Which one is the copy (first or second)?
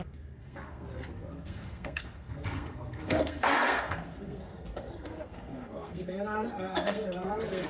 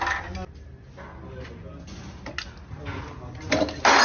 first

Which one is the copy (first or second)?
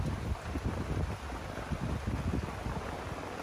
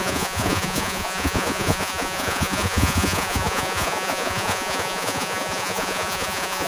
second